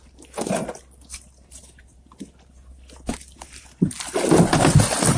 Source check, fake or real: real